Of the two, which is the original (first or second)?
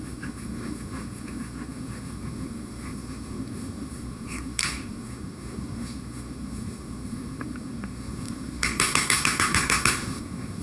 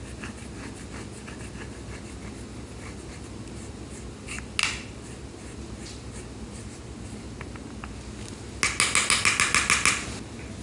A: second